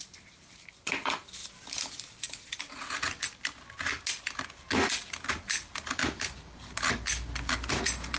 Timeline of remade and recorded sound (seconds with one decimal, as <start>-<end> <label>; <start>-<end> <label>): 0.0-1.4 remade; 1.4-5.3 recorded; 5.3-6.0 remade; 6.0-7.7 recorded; 7.7-8.2 remade